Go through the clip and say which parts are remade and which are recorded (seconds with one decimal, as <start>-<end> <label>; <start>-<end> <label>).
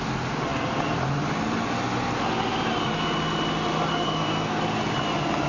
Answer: 0.0-3.9 recorded; 3.9-4.6 remade; 4.6-5.5 recorded